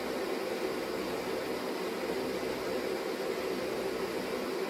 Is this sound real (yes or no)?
yes